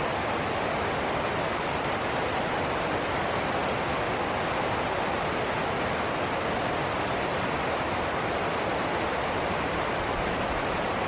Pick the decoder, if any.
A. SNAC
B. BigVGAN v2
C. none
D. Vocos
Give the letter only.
C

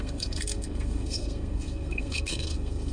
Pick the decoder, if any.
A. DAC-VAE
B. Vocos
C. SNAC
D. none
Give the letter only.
C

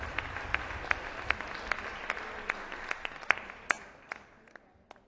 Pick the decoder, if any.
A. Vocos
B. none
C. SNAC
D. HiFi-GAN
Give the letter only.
B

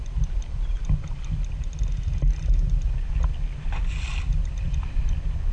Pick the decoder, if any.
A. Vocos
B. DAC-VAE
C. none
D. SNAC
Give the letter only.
C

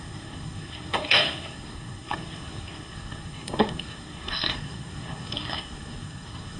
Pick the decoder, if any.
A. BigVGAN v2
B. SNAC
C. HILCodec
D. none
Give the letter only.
B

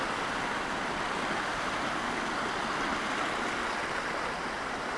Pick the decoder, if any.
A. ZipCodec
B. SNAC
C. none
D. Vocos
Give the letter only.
C